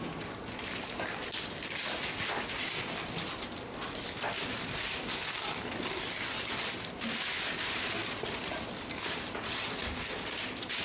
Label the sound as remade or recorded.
recorded